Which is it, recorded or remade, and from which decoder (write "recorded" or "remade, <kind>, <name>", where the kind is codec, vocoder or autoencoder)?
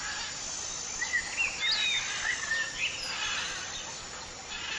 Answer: recorded